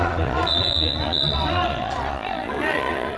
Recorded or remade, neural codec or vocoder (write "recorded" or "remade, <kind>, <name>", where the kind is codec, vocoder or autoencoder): remade, vocoder, Vocos